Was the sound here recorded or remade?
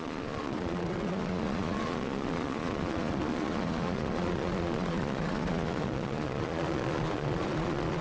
remade